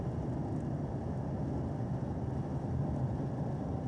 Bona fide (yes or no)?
yes